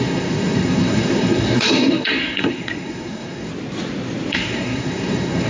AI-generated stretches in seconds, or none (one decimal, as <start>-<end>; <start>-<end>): 0.0-3.5; 4.3-5.5